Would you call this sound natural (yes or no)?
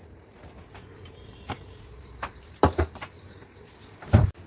no